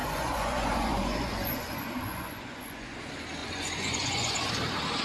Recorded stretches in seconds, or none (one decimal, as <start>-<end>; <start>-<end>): 3.0-3.4; 4.5-5.0